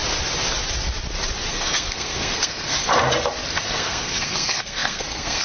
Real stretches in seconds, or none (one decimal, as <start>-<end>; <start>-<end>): 0.0-1.5; 2.9-3.6